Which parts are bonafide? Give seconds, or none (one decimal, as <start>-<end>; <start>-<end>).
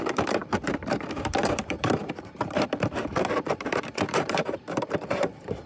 none